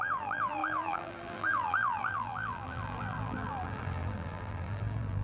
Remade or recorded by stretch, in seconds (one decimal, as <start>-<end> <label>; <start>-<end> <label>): 0.0-5.2 remade